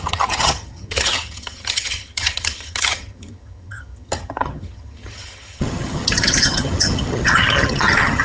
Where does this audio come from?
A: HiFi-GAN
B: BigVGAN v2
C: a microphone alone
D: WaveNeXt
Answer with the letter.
A